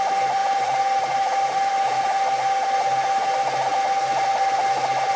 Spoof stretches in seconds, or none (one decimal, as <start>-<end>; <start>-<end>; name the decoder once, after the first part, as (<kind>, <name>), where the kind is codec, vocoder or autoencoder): 0.4-1.7 (vocoder, BigVGAN v2)